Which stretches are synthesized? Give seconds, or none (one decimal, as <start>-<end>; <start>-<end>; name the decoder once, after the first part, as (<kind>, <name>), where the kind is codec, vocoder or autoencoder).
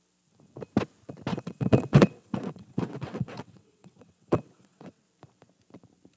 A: 1.3-5.0 (vocoder, WaveNeXt)